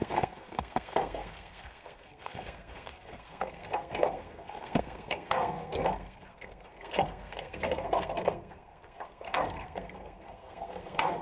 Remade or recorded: remade